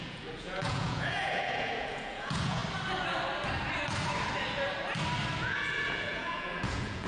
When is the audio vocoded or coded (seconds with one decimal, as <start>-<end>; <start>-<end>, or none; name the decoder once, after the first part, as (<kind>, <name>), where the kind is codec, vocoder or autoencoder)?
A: 0.0-2.6 (vocoder, Vocos); 5.4-7.1